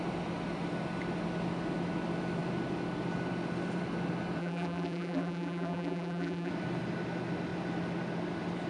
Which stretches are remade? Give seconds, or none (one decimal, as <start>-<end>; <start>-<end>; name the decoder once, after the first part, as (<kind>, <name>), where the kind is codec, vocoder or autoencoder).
4.4-6.5 (vocoder, BigVGAN v2)

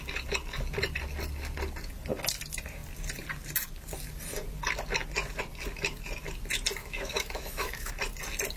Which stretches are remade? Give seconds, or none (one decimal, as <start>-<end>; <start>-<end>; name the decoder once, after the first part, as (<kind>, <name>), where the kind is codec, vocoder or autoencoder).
6.8-7.9 (autoencoder, DAC-VAE)

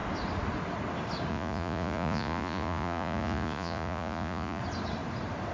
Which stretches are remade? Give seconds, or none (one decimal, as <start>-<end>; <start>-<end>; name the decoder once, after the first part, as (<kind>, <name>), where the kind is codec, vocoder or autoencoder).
1.3-4.6 (vocoder, Vocos)

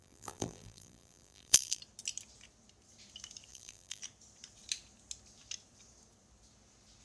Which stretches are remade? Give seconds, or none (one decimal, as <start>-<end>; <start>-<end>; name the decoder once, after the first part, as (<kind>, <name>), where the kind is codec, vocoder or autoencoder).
0.0-1.8 (vocoder, BigVGAN v2); 3.5-4.0

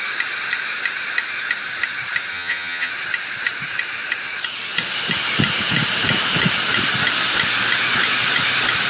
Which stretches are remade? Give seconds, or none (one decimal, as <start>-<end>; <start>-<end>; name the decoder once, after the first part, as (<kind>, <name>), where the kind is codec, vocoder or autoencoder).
2.3-2.9 (vocoder, HiFi-GAN)

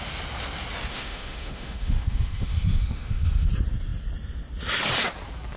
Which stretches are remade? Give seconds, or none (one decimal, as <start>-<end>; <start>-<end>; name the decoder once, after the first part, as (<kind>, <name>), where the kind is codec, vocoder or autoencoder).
0.9-3.5 (autoencoder, DAC-VAE)

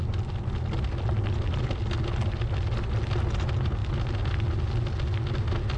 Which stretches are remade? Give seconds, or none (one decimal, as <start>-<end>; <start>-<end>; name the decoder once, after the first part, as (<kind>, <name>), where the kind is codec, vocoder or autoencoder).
none

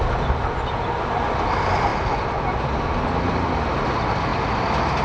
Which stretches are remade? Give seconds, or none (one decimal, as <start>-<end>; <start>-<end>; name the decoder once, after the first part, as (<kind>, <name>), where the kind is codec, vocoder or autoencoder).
none